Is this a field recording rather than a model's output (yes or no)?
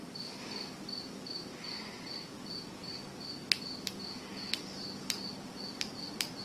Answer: yes